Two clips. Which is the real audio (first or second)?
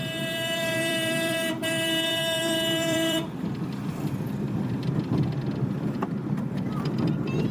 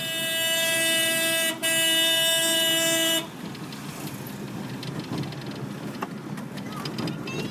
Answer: second